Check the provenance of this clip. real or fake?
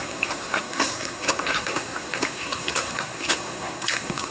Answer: fake